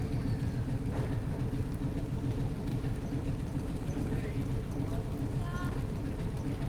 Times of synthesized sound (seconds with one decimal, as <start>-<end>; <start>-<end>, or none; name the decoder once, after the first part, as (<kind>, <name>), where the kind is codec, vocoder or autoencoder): 2.7-4.3 (vocoder, BigVGAN v2)